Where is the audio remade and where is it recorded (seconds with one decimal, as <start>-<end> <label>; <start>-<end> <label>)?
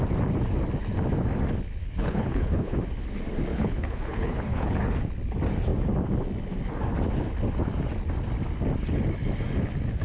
0.0-1.8 recorded; 1.8-2.8 remade; 2.8-3.5 recorded; 3.5-4.8 remade; 4.8-10.0 recorded